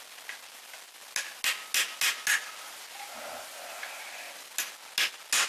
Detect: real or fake real